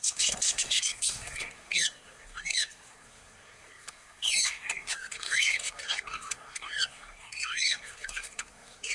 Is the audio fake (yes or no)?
yes